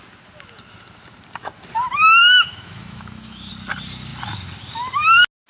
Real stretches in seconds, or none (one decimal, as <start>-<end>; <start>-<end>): 0.0-2.2; 3.5-5.5